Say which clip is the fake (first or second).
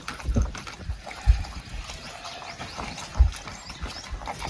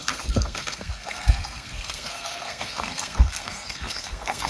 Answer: second